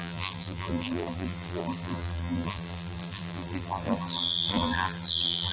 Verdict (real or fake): fake